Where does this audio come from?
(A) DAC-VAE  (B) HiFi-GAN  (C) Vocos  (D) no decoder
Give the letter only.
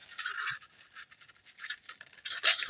D